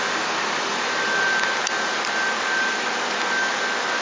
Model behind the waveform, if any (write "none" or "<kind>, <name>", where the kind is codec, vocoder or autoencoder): none